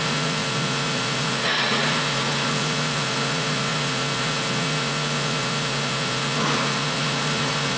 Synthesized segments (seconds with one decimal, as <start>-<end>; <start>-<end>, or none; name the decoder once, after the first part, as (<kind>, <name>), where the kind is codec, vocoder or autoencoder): 0.0-7.8 (vocoder, Vocos)